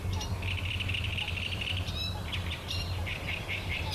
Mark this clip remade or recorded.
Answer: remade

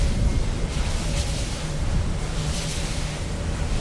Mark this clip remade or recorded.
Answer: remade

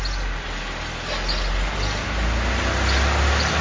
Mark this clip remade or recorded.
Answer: recorded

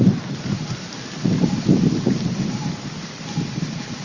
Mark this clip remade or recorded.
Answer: remade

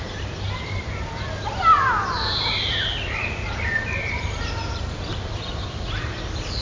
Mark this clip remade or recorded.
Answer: remade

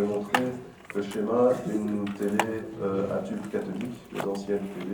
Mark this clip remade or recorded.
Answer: recorded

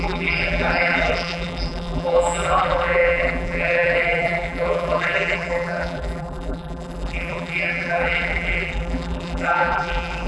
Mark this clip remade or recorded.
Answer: remade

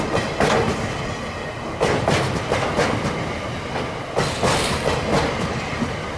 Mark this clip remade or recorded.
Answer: recorded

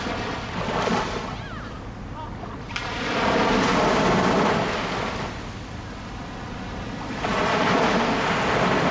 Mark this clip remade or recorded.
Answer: recorded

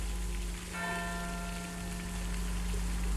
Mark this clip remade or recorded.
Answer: recorded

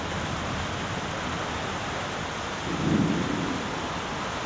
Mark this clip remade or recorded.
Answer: recorded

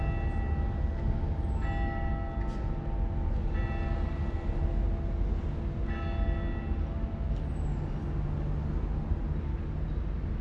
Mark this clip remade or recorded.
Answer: recorded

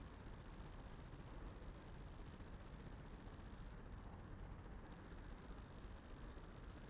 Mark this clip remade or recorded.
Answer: recorded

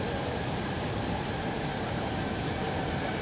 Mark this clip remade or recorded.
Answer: remade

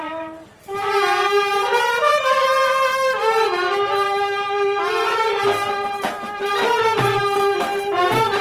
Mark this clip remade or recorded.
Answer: remade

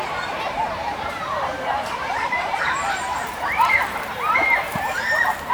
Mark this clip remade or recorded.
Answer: remade